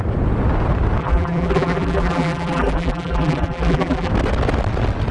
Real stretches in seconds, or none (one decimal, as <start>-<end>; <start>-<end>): 0.0-1.0; 4.1-5.1